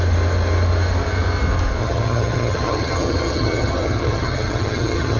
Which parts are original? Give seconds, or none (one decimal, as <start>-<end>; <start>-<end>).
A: 0.0-1.8